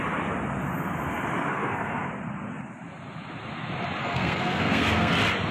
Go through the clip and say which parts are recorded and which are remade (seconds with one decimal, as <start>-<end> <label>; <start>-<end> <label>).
0.0-1.5 recorded; 1.5-2.1 remade; 2.1-4.0 recorded; 4.0-5.1 remade; 5.1-5.5 recorded